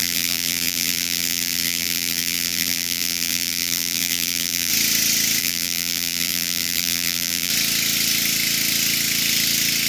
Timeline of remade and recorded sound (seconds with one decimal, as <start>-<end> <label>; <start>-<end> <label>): 0.0-4.7 remade; 4.7-5.4 recorded; 5.4-7.5 remade; 7.5-9.9 recorded